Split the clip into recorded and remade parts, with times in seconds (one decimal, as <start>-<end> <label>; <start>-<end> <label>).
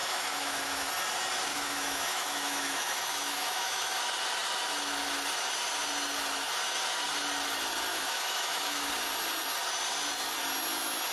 0.0-0.9 remade; 0.9-1.5 recorded; 1.5-4.0 remade; 4.0-7.9 recorded; 7.9-8.9 remade; 8.9-11.1 recorded